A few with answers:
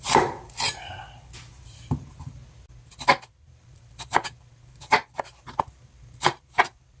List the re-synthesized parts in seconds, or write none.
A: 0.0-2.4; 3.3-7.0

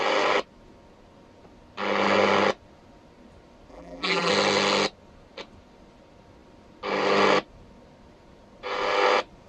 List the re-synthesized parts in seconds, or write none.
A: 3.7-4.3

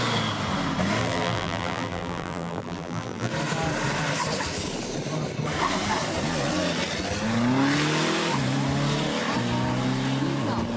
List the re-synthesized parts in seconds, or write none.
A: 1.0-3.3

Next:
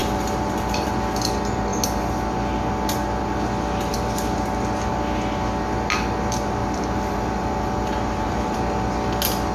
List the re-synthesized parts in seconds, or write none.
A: 0.0-0.9; 6.6-8.6

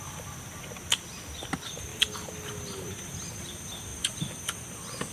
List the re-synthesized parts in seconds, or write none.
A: 1.9-3.5; 3.9-4.4

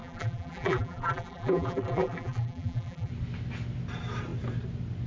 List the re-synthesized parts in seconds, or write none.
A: 0.0-3.1

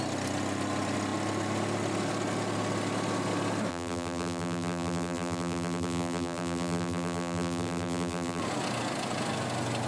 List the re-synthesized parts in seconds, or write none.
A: 3.7-8.4